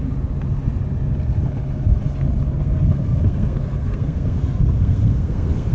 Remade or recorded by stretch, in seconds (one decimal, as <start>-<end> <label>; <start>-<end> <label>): 0.0-2.6 recorded; 2.6-5.7 remade